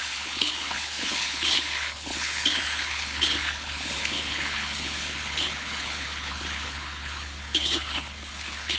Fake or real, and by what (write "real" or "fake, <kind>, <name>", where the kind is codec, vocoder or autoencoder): fake, codec, HILCodec